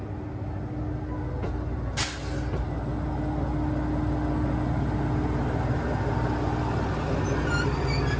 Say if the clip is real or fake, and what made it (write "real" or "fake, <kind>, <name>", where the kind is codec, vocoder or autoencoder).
real